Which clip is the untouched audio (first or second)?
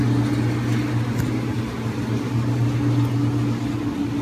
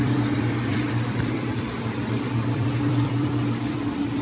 first